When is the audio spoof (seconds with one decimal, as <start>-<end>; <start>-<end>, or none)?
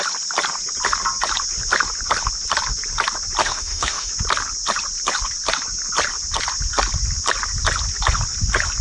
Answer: 3.4-4.1